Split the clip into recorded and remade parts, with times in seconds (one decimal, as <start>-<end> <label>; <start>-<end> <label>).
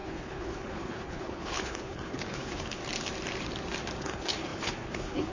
0.0-2.8 remade; 2.8-4.0 recorded; 4.0-5.3 remade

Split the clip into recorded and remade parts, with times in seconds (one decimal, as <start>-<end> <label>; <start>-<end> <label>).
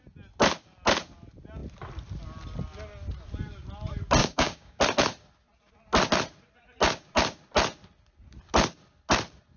0.0-4.2 recorded; 4.2-4.8 remade; 4.8-9.6 recorded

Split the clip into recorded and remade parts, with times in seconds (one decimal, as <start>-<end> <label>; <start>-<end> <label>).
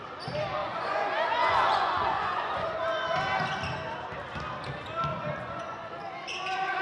0.0-0.6 recorded; 0.6-3.2 remade; 3.2-5.1 recorded; 5.1-5.9 remade; 5.9-6.8 recorded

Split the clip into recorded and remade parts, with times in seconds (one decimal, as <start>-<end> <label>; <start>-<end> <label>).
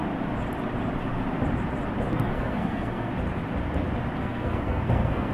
0.0-2.1 recorded; 2.1-3.1 remade; 3.1-4.2 recorded; 4.2-5.3 remade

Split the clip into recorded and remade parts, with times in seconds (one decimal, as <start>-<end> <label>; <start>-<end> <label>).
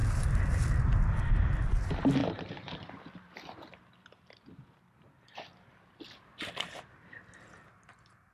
0.0-2.2 recorded; 2.2-2.9 remade; 2.9-8.3 recorded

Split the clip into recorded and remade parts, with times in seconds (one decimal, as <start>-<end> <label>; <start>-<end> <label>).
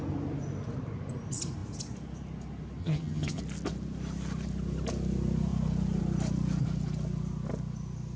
0.0-2.8 recorded; 2.8-3.4 remade; 3.4-8.2 recorded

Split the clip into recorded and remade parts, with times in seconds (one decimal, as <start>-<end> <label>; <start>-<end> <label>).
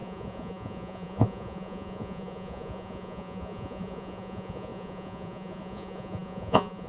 0.0-6.9 remade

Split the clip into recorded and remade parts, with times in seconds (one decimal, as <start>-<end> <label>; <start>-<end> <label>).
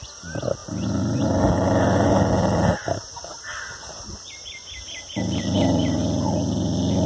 0.0-7.1 recorded